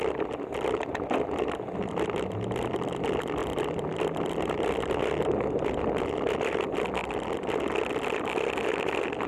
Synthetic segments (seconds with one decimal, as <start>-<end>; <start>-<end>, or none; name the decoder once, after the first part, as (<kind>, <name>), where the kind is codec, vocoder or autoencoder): 3.4-6.9 (vocoder, BigVGAN v2)